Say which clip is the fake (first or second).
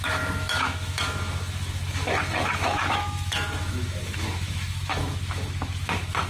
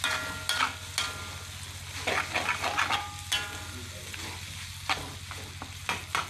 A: first